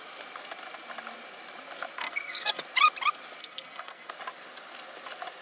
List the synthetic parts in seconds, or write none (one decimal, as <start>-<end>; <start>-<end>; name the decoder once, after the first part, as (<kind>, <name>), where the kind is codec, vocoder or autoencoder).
2.0-2.6 (codec, SNAC); 3.4-4.1